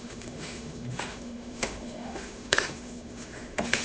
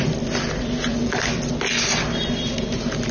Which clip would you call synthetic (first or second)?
first